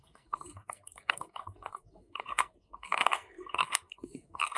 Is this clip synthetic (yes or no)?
yes